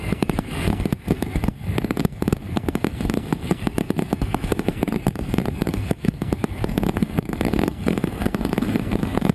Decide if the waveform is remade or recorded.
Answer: remade